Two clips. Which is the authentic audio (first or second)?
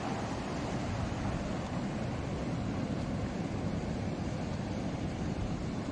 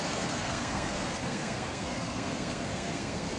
first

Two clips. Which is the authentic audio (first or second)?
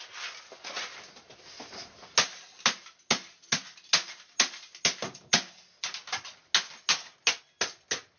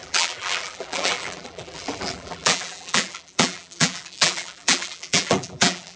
first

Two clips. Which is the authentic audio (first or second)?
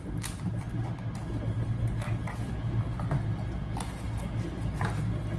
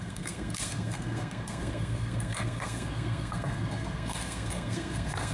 first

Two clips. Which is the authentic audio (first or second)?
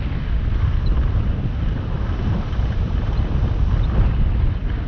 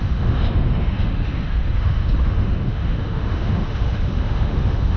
first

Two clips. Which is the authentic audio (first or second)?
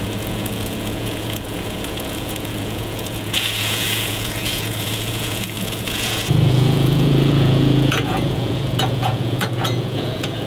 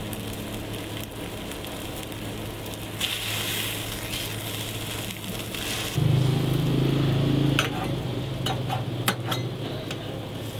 second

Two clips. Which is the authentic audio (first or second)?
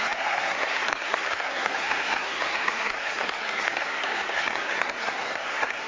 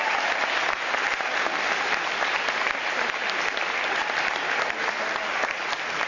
second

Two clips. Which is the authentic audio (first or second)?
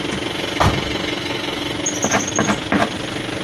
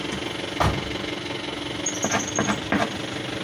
second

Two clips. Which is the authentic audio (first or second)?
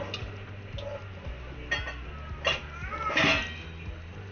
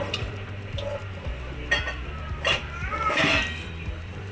first